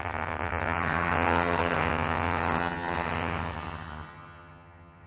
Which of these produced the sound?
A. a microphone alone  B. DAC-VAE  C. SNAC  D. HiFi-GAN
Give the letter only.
D